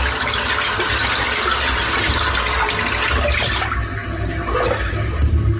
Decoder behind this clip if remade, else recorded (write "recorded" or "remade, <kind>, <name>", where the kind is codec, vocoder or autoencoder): recorded